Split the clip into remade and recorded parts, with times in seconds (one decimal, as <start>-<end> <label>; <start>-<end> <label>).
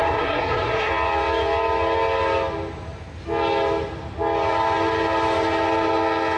0.0-0.9 remade; 0.9-6.4 recorded